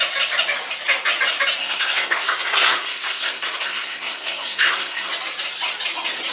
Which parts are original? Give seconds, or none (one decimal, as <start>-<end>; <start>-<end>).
0.0-1.6; 5.1-6.3